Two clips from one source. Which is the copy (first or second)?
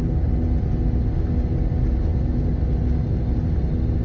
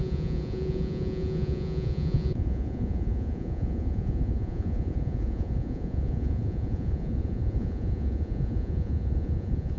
second